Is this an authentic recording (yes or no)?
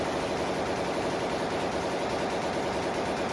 yes